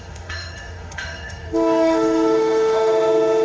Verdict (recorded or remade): remade